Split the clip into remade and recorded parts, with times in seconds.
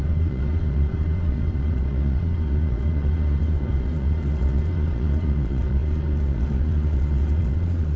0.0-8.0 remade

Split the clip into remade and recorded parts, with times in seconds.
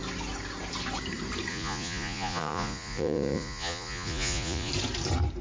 0.0-1.5 recorded; 1.5-4.7 remade; 4.7-5.4 recorded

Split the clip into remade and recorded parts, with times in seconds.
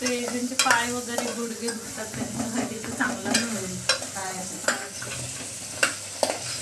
0.0-1.3 recorded; 1.3-3.1 remade; 3.1-4.2 recorded; 4.2-5.1 remade; 5.1-6.6 recorded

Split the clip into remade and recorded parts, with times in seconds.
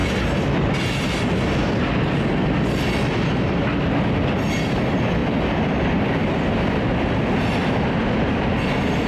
0.0-9.1 recorded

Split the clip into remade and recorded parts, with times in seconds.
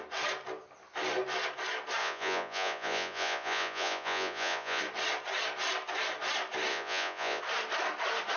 0.0-2.0 recorded; 2.0-4.8 remade; 4.8-6.7 recorded; 6.7-7.4 remade; 7.4-8.4 recorded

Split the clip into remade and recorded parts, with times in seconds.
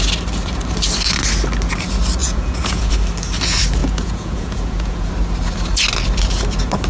0.0-2.2 recorded; 2.2-2.9 remade; 2.9-3.8 recorded; 3.8-5.1 remade; 5.1-6.9 recorded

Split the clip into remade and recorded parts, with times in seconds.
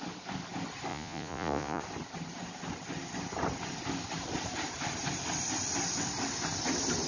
0.0-0.9 recorded; 0.9-1.8 remade; 1.8-7.1 recorded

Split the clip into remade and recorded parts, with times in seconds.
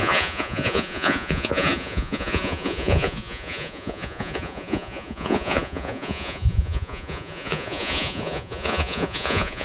0.0-9.6 remade